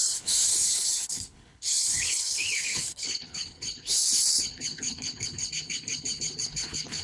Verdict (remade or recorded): remade